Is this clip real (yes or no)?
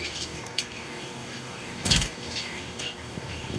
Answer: no